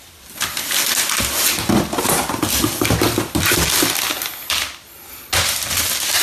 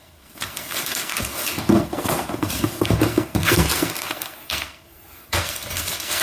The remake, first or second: second